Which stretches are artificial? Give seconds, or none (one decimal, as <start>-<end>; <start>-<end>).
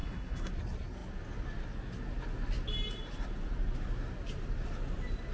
0.0-0.5